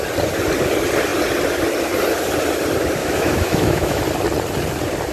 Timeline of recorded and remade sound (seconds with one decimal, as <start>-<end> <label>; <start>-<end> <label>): 0.0-3.0 recorded; 3.0-4.0 remade; 4.0-5.1 recorded

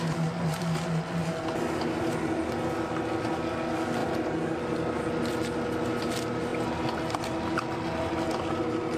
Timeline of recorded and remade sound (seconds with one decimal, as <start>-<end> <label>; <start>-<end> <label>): 0.0-9.0 recorded